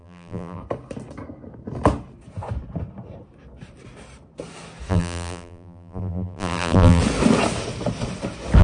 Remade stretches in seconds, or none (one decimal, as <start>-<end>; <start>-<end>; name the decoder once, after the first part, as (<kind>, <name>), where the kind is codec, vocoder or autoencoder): 0.0-0.6 (vocoder, BigVGAN v2); 4.9-7.0